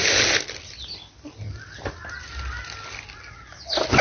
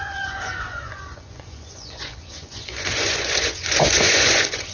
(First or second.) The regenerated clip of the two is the second